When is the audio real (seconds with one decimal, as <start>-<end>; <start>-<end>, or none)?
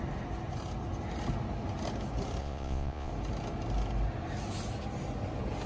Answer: 0.0-2.4; 3.1-5.7